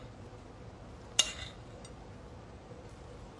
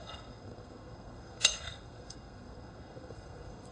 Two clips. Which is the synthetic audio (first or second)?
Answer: second